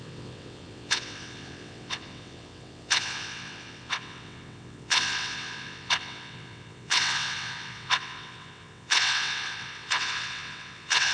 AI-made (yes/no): yes